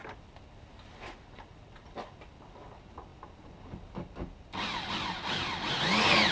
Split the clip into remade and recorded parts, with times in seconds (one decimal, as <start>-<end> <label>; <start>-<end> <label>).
0.0-6.3 recorded